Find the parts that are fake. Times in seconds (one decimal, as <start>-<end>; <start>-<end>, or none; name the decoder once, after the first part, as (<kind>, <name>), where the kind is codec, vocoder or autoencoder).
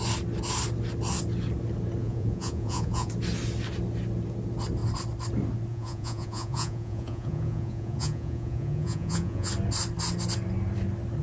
2.0-3.1 (vocoder, Vocos); 5.7-9.5